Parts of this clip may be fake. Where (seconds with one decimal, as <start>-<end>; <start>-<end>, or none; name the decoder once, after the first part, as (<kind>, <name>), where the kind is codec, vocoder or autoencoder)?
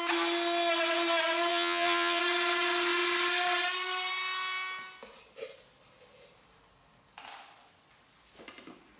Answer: 1.5-2.2 (vocoder, HiFi-GAN)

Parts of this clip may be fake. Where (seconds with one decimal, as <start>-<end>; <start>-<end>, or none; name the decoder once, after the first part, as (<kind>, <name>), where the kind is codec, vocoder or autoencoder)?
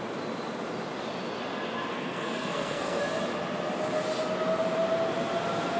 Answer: 1.9-3.0 (codec, SNAC)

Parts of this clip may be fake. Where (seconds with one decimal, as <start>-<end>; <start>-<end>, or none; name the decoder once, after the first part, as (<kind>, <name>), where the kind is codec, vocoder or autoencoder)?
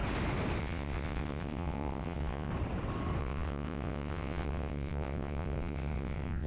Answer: 0.6-2.5 (vocoder, WaveNeXt); 3.2-6.5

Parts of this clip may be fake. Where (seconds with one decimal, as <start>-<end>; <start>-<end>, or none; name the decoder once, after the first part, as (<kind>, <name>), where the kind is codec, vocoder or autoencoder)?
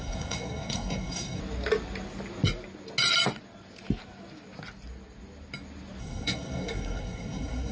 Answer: 0.0-1.4 (codec, SNAC); 6.0-7.7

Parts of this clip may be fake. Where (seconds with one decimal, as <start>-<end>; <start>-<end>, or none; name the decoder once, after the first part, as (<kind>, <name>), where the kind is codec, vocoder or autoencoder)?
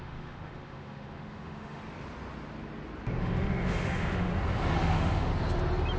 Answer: 0.0-1.8 (autoencoder, DAC-VAE); 3.2-4.3; 4.8-5.3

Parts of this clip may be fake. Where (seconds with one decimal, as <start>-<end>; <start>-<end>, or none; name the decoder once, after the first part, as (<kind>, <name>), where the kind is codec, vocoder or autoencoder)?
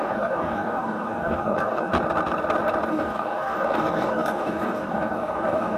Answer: 0.0-1.9 (codec, DAC); 2.9-5.8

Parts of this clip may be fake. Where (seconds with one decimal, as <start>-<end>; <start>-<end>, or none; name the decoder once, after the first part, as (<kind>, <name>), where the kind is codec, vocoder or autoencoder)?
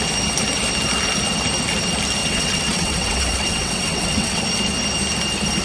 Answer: 2.2-4.4 (vocoder, WaveNeXt)